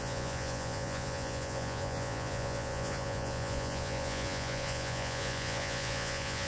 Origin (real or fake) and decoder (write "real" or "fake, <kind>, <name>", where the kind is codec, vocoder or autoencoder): fake, vocoder, Vocos